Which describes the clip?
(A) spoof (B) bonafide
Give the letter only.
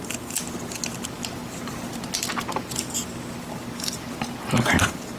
B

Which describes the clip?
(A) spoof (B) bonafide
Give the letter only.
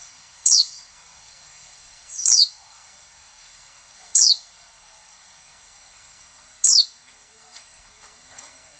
A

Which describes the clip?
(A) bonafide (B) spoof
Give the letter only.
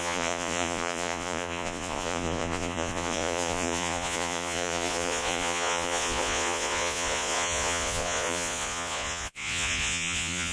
B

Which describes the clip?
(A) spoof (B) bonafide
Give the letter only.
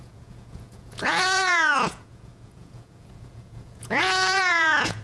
A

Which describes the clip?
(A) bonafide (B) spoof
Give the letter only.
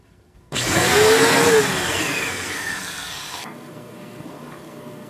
B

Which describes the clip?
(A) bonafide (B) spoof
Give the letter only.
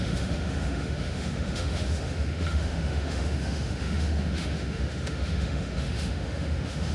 B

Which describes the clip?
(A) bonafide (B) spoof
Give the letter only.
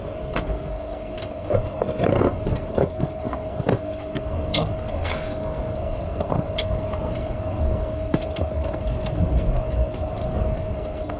B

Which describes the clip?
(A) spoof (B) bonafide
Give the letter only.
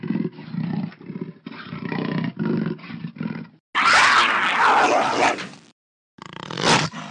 B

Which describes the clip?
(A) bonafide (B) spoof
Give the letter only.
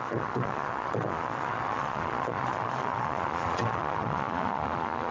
B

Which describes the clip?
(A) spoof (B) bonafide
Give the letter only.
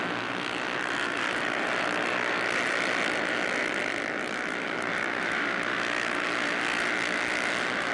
B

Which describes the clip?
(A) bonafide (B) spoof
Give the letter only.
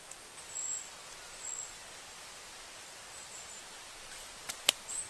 A